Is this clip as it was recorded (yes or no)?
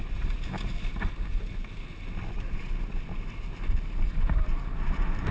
yes